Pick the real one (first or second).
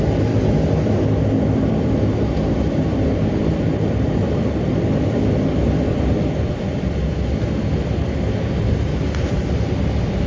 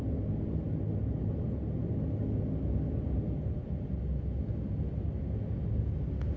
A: second